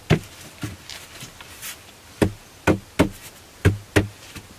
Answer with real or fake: real